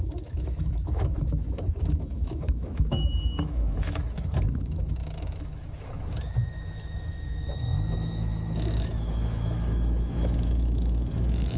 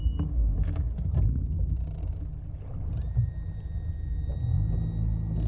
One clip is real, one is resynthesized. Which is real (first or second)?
second